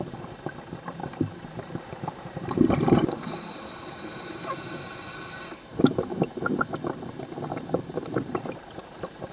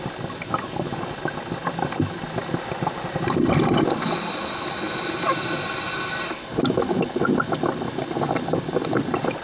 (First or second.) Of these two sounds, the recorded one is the second